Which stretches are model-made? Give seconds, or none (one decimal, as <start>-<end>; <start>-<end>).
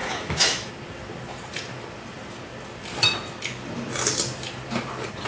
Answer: 0.0-0.7